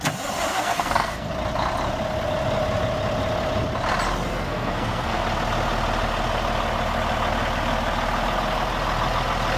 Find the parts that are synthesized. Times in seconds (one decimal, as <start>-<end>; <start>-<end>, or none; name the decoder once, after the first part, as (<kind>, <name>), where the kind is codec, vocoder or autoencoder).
0.5-1.3 (codec, SNAC); 4.3-5.2